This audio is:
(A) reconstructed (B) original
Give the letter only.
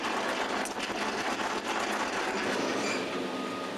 B